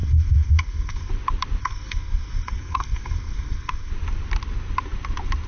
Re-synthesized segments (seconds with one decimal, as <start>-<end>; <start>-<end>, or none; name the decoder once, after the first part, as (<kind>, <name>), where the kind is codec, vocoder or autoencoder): 0.0-1.1 (codec, SNAC); 1.6-3.9